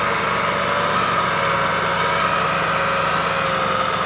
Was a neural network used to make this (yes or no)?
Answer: no